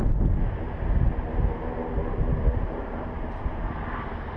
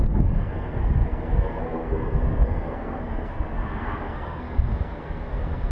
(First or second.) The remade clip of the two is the second